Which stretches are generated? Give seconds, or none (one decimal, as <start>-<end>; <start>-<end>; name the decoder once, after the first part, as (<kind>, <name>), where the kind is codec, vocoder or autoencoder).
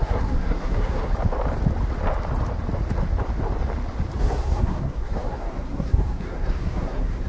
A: 0.0-1.1 (codec, SNAC); 4.2-7.3